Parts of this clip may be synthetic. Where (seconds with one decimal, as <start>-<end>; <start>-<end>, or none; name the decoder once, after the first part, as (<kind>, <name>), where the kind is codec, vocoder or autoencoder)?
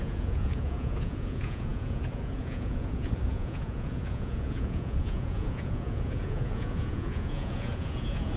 0.0-8.4 (vocoder, Vocos)